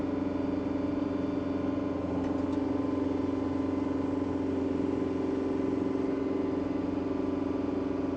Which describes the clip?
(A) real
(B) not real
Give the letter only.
A